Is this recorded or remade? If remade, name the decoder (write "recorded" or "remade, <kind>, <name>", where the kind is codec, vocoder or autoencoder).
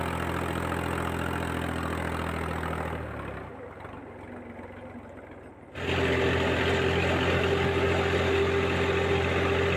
recorded